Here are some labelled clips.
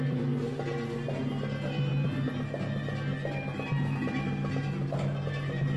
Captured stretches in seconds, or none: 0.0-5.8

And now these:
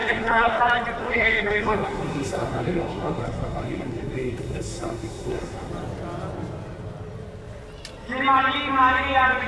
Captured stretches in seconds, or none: 0.6-1.0; 5.7-9.5

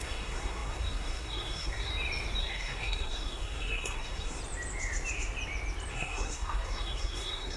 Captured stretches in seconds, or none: 1.9-2.4; 4.4-5.9